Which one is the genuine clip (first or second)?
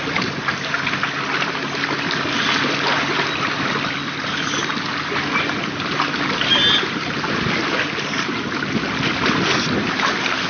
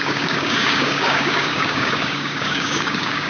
first